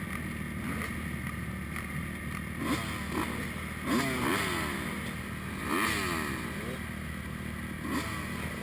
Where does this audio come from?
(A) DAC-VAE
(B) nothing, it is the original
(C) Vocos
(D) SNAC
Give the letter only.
B